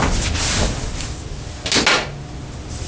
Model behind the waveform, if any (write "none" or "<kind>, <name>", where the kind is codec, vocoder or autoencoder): none